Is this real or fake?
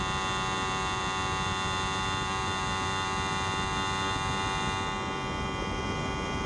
real